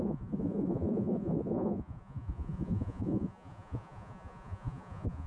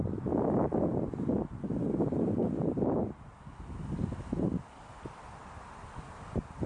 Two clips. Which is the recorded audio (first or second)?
second